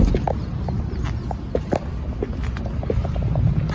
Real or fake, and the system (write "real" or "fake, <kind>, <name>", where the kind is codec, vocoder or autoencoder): real